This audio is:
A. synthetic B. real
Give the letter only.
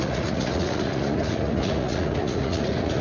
A